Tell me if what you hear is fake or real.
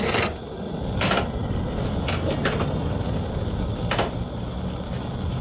real